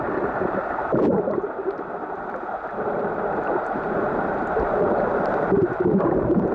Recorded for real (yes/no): no